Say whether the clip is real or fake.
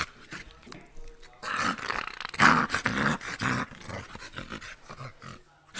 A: real